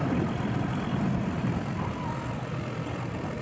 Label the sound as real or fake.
real